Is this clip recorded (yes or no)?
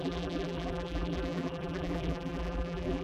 no